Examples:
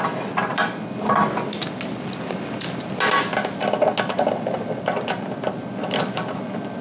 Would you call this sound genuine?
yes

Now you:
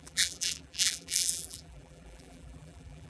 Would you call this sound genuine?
no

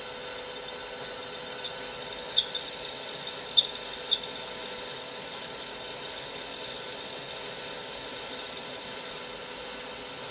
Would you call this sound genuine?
yes